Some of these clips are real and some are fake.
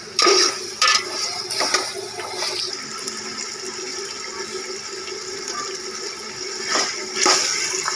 real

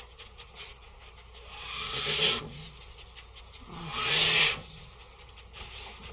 real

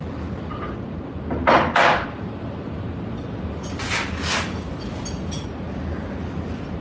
real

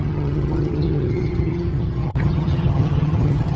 fake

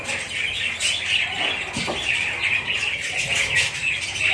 real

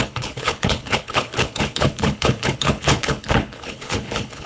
fake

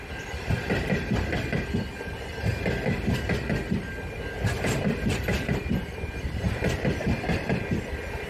real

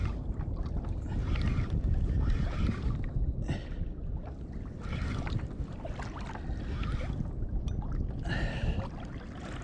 real